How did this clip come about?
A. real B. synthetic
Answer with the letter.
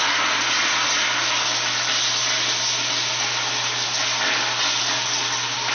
A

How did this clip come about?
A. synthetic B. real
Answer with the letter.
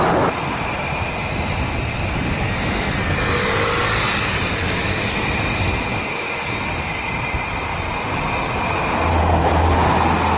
B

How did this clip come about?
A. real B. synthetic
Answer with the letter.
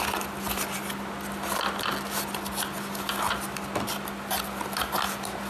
A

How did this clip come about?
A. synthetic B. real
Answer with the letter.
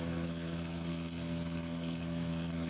A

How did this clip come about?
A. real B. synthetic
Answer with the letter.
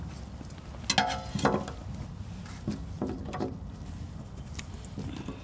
A